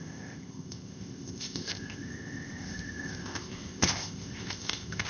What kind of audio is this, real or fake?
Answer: fake